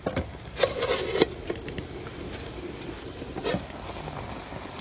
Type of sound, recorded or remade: recorded